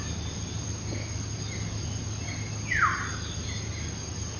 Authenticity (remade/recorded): recorded